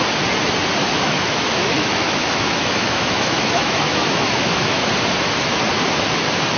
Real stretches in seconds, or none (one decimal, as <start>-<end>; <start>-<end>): 0.0-0.9; 4.9-6.6

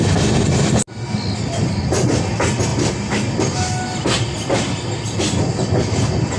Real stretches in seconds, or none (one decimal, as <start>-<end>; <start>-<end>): 0.0-6.4